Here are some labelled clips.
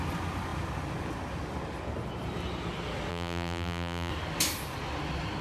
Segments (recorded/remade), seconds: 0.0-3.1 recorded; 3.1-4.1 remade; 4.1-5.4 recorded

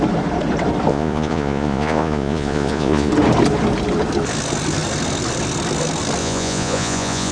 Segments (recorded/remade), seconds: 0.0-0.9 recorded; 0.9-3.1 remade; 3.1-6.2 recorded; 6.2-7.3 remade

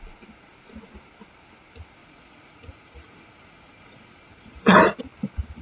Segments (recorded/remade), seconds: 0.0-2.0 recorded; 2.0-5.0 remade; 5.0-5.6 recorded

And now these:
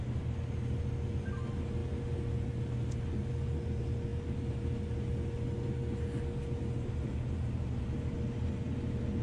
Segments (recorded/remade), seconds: 0.0-9.2 recorded